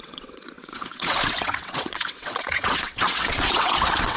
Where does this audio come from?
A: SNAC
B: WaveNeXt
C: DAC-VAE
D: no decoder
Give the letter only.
B